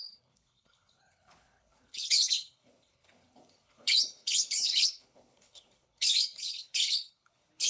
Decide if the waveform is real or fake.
fake